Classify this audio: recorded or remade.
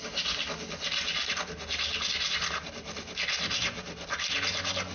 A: recorded